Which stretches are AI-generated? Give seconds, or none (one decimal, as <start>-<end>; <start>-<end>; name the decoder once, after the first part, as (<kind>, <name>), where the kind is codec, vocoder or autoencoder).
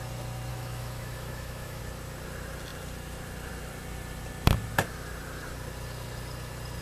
0.5-1.8 (autoencoder, DAC-VAE)